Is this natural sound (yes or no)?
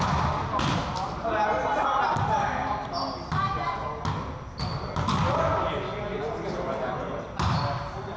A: yes